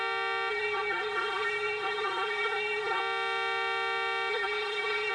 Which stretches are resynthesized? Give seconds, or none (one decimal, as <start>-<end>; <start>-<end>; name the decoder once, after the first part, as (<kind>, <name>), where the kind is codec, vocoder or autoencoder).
0.5-3.0 (codec, SNAC); 4.3-5.1